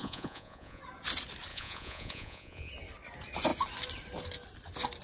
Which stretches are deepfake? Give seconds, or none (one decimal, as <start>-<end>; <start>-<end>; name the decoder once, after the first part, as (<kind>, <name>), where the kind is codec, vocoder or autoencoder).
0.0-0.8 (vocoder, Vocos); 1.5-2.7